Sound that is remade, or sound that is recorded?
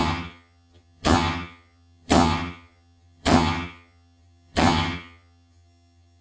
remade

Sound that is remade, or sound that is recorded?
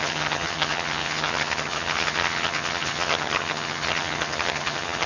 remade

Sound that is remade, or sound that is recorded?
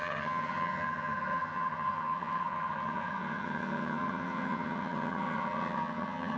remade